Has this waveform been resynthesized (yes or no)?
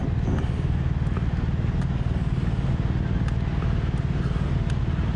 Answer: no